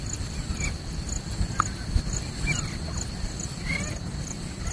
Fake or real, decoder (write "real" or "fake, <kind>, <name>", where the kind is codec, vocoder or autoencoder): real